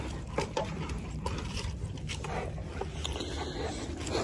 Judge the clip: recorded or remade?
recorded